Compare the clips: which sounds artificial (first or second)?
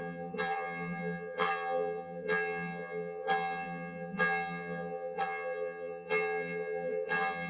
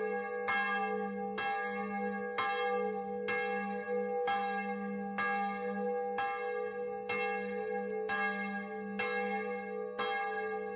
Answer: first